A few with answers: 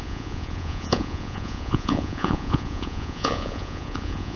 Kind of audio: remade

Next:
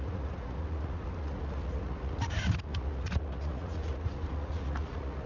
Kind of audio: remade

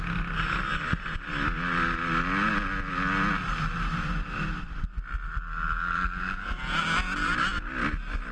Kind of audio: recorded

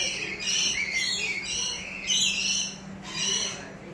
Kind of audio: recorded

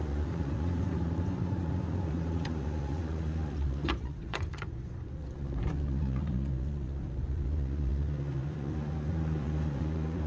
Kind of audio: remade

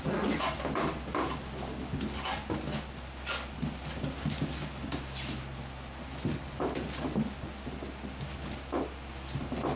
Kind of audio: recorded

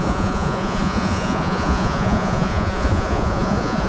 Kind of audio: remade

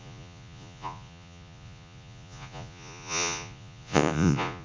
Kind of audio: remade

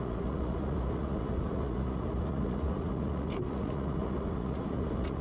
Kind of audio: remade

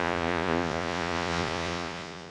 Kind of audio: remade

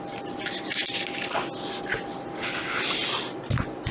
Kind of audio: recorded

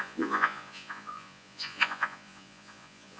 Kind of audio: remade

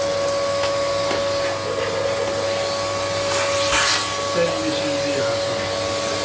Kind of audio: recorded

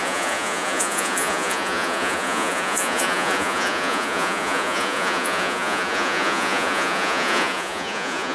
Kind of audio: remade